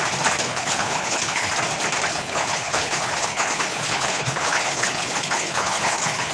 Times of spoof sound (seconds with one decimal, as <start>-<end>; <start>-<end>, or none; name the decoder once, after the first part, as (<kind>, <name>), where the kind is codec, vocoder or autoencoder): 0.4-1.5 (codec, HILCodec); 2.1-6.3